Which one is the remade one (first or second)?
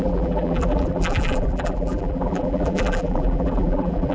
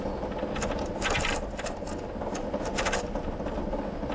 first